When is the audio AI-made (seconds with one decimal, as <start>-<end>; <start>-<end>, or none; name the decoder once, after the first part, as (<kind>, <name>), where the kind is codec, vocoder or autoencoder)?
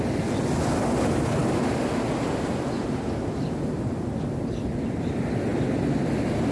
none